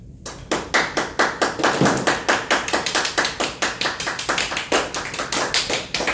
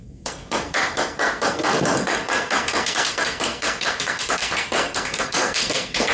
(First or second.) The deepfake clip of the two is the second